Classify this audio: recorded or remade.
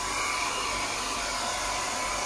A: recorded